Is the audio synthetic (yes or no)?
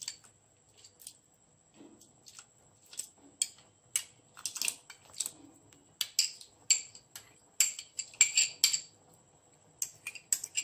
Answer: no